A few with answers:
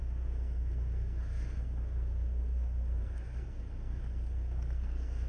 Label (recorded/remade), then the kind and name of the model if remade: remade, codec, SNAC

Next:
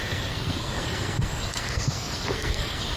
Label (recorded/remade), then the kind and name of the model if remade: remade, codec, SNAC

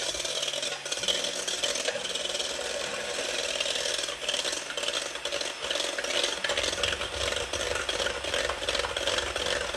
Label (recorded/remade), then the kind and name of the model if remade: recorded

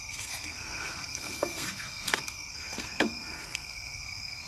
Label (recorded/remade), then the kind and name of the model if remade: remade, codec, SNAC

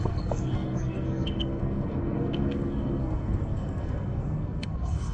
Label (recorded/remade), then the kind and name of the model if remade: remade, codec, SNAC